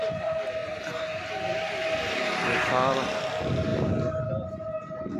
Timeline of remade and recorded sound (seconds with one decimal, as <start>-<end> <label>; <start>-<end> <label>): 0.0-5.2 recorded